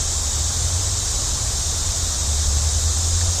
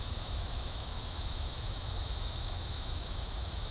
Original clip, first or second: first